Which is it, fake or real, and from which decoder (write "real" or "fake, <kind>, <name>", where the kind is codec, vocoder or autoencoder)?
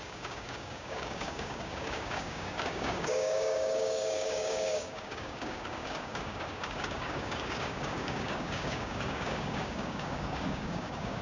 fake, codec, DAC